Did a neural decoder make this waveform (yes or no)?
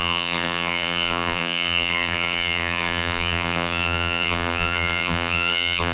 yes